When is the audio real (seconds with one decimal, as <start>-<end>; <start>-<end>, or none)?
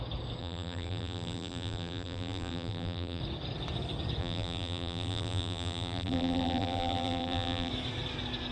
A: 0.0-0.4; 3.2-4.2; 7.7-8.5